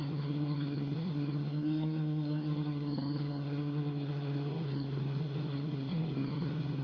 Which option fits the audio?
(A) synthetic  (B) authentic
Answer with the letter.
A